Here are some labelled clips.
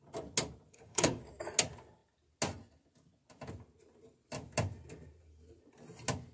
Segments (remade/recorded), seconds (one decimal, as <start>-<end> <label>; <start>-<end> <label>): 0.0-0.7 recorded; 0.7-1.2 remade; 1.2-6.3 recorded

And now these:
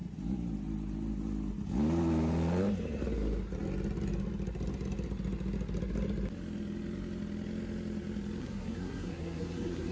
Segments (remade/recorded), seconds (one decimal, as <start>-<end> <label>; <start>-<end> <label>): 0.0-8.4 recorded; 8.4-9.9 remade

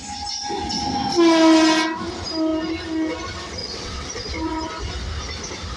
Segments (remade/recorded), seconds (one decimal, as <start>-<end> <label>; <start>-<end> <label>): 0.0-3.6 recorded; 3.6-4.1 remade; 4.1-5.8 recorded